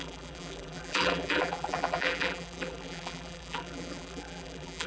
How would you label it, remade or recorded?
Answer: remade